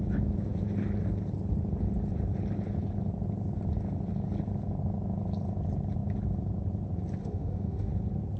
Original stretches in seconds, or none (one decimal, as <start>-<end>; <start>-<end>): 0.0-7.2; 7.9-8.4